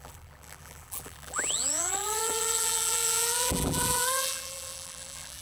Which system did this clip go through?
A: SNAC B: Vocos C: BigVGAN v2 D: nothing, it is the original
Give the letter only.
C